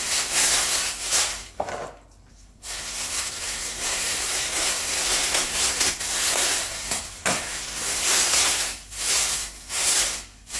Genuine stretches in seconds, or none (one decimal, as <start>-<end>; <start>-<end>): 1.7-2.3